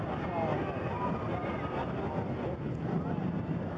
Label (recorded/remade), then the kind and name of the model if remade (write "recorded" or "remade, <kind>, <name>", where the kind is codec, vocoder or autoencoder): recorded